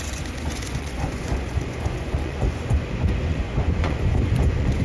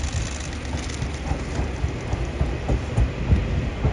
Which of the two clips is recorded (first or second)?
second